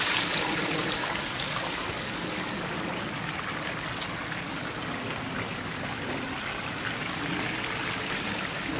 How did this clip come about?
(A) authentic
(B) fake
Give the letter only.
A